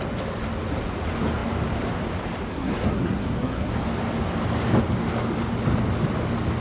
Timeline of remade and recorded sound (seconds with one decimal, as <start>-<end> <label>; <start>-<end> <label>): 0.0-2.5 recorded; 2.5-3.7 remade; 3.7-6.6 recorded